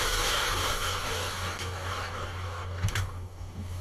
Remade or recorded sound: remade